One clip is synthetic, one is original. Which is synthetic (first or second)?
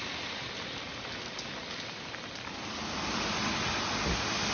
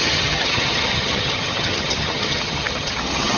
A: second